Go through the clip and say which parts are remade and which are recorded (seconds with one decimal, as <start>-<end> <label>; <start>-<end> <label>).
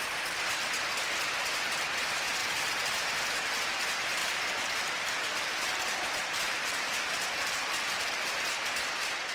0.0-2.4 recorded; 2.4-3.1 remade; 3.1-4.2 recorded; 4.2-8.5 remade; 8.5-9.3 recorded